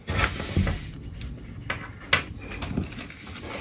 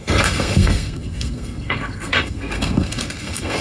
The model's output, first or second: second